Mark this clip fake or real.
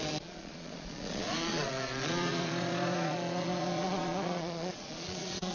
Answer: fake